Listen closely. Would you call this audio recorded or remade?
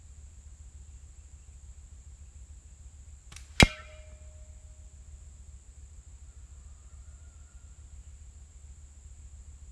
recorded